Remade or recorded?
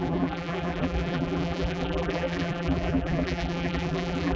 remade